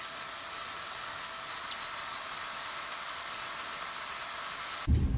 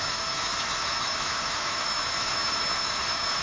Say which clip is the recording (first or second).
first